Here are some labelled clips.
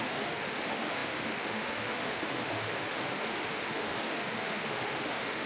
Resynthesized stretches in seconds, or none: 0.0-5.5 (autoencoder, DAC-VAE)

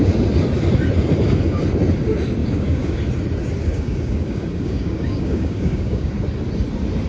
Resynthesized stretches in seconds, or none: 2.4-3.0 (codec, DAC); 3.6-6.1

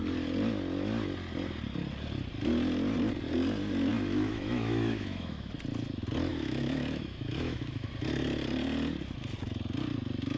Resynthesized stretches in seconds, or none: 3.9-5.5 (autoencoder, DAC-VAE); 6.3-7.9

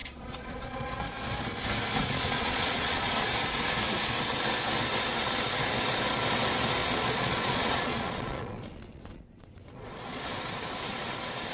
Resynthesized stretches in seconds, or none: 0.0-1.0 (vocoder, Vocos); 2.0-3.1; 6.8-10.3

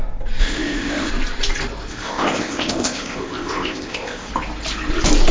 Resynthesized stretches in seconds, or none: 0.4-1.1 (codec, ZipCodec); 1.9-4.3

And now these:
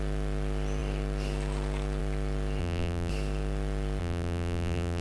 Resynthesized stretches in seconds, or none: 2.6-3.1 (vocoder, BigVGAN v2); 4.0-5.0